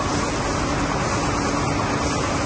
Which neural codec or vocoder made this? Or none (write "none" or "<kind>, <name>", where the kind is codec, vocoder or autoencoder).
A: none